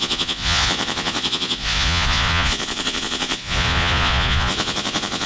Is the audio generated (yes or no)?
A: yes